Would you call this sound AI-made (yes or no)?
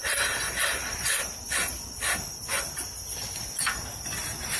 no